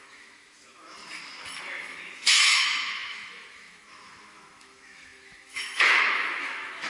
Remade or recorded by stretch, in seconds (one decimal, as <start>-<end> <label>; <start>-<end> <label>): 0.0-1.0 remade; 1.0-1.6 recorded; 1.6-6.9 remade